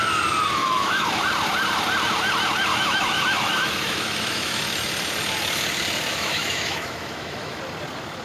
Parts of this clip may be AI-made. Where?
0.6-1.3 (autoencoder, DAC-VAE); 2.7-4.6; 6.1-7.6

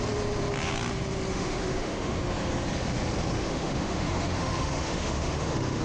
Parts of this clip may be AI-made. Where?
1.3-2.2 (autoencoder, DAC-VAE); 3.3-5.8